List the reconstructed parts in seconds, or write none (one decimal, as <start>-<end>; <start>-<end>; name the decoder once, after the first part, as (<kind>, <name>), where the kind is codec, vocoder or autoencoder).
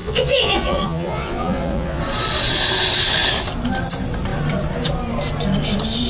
0.0-2.0 (vocoder, Vocos)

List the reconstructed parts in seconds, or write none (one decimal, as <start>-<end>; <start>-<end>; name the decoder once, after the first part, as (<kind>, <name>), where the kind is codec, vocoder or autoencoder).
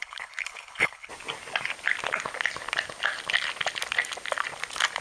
0.0-1.1 (codec, HILCodec)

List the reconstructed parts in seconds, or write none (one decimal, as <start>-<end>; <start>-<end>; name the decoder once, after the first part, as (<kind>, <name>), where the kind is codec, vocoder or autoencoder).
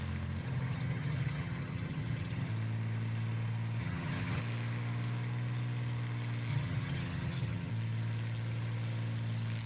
0.4-2.5 (vocoder, HiFi-GAN); 3.8-4.4; 6.5-7.7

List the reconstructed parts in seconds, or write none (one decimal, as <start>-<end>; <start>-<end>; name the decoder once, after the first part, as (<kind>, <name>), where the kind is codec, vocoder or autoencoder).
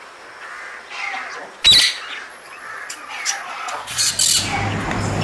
2.3-4.1 (vocoder, Vocos)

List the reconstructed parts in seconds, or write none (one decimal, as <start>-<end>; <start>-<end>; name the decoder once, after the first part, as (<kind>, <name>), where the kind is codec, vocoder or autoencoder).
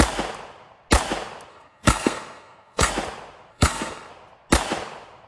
1.5-2.9 (codec, SNAC); 3.5-4.1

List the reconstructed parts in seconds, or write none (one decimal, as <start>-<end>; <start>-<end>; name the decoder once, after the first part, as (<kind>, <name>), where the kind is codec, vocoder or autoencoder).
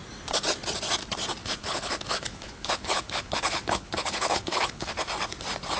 1.4-4.9 (codec, HILCodec)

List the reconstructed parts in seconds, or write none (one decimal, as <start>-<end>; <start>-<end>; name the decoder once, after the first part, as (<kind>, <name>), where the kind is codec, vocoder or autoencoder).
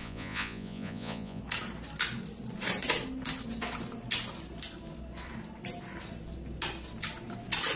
0.0-1.4 (vocoder, Vocos)